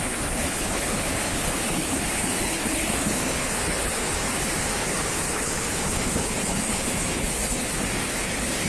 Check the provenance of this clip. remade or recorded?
remade